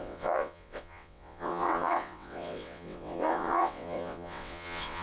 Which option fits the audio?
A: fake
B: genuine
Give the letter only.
A